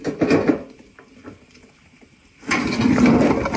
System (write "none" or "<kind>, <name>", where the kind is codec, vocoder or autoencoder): none